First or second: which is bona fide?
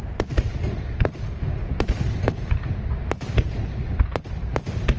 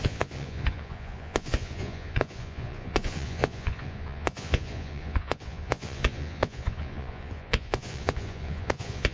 first